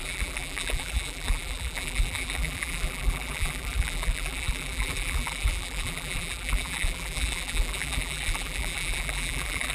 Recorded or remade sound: remade